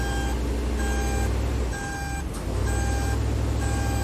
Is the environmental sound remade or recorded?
recorded